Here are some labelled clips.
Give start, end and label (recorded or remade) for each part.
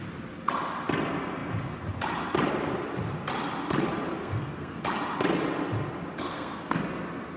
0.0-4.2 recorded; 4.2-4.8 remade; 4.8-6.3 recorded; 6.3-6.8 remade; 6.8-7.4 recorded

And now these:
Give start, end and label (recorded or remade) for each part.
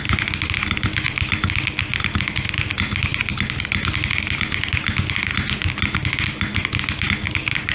0.0-7.7 recorded